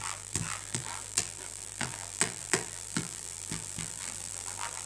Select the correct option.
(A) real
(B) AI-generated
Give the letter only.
B